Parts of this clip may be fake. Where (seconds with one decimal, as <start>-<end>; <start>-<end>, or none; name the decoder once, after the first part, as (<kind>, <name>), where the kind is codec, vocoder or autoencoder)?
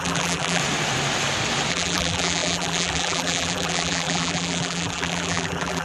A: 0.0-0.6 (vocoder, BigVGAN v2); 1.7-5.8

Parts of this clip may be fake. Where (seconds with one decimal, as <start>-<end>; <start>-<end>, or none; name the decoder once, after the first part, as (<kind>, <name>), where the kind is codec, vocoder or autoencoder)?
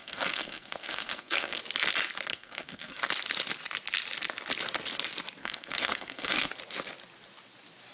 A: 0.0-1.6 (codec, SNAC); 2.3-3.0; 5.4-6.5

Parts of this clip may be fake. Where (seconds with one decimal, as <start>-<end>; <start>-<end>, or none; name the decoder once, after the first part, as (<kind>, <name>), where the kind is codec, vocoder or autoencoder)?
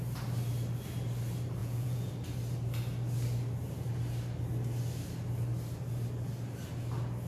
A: 1.6-2.1 (vocoder, Vocos)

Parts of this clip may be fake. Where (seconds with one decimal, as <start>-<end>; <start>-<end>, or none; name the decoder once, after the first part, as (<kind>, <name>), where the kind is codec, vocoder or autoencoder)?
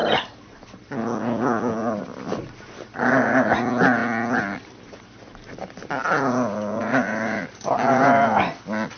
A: 0.0-0.6 (vocoder, BigVGAN v2); 6.8-7.5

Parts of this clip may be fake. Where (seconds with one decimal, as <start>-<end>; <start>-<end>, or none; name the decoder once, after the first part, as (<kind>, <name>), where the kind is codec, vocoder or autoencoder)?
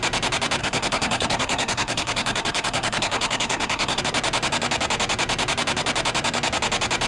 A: 0.6-4.0 (codec, SNAC)